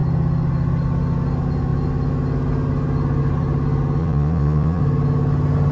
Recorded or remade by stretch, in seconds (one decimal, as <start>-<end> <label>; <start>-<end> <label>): 0.0-4.0 recorded; 4.0-4.8 remade; 4.8-5.7 recorded